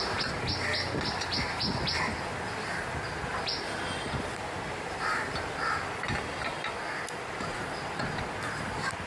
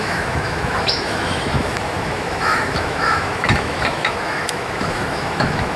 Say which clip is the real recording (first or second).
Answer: first